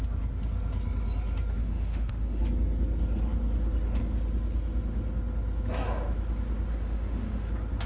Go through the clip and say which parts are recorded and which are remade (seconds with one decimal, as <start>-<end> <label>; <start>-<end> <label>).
0.0-1.6 recorded; 1.6-2.4 remade; 2.4-6.7 recorded; 6.7-7.5 remade; 7.5-7.9 recorded